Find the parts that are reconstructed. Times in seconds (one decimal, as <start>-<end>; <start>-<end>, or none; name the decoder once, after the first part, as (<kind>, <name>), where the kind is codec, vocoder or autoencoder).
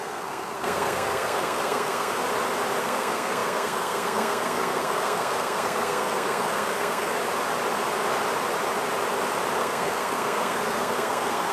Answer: 0.0-2.2 (codec, SNAC); 2.8-7.2; 9.6-11.5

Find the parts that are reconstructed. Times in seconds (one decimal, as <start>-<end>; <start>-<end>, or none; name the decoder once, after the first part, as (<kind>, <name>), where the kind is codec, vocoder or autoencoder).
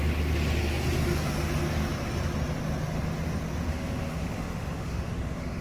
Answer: 3.7-5.6 (autoencoder, DAC-VAE)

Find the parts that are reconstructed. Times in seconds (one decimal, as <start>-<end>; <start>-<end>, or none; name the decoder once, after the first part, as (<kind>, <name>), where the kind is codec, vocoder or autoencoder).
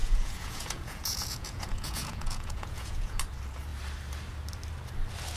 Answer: 0.0-3.2 (vocoder, Vocos)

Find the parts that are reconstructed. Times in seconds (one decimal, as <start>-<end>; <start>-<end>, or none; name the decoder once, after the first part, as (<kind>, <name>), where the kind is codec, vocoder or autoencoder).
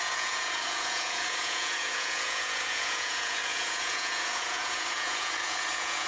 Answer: 0.0-6.1 (vocoder, Vocos)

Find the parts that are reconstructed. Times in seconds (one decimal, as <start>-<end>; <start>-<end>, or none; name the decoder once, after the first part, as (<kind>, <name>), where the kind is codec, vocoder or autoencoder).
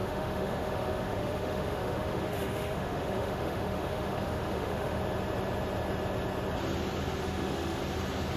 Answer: 0.0-5.0 (autoencoder, DAC-VAE); 7.2-7.8